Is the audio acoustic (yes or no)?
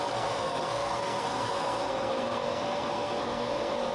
no